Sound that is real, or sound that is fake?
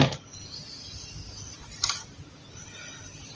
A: real